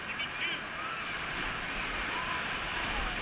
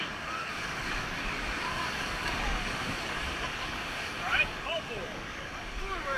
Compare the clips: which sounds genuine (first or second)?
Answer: first